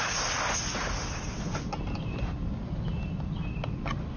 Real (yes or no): yes